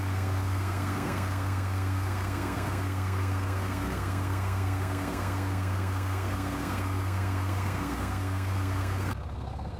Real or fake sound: fake